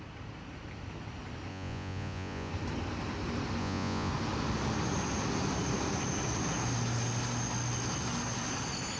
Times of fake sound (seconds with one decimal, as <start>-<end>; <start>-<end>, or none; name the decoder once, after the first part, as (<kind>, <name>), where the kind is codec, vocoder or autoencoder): 1.5-2.5 (vocoder, Vocos); 3.6-4.1

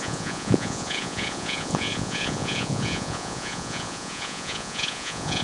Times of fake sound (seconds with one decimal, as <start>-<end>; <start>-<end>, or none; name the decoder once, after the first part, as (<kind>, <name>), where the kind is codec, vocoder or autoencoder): 0.0-5.4 (vocoder, Vocos)

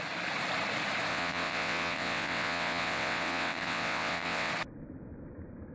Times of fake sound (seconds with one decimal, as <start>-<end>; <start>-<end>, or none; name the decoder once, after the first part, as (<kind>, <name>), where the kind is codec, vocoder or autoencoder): 1.1-4.5 (vocoder, WaveNeXt)

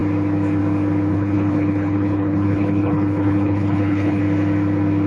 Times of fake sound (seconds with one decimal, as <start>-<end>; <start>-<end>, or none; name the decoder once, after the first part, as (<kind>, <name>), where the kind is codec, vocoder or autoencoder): 1.1-4.2 (codec, HILCodec)

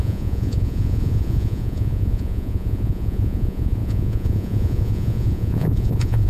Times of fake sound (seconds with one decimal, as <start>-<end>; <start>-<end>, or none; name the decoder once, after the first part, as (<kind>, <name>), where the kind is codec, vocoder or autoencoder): 0.0-6.3 (vocoder, Vocos)

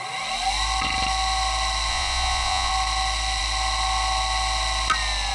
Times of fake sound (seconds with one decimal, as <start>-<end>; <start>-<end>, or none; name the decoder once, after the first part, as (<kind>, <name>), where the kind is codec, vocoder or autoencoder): 1.9-2.7 (vocoder, Vocos)